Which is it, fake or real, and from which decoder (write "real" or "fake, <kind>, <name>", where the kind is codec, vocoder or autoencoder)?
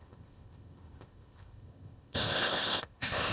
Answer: fake, codec, ZipCodec